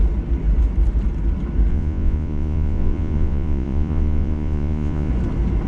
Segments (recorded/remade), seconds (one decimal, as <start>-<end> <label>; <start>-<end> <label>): 0.0-1.7 recorded; 1.7-5.1 remade; 5.1-5.7 recorded